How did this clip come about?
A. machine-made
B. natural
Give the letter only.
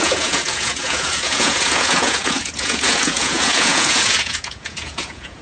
A